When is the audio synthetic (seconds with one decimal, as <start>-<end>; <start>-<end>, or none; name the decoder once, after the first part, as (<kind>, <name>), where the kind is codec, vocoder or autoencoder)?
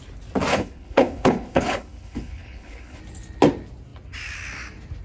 0.5-3.0 (codec, HILCodec)